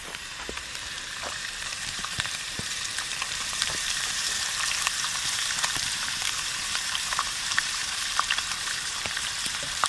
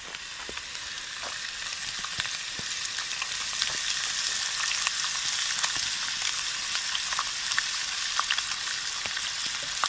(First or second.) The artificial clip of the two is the first